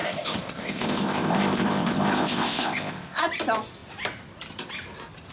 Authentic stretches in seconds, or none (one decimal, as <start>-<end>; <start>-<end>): 3.2-5.3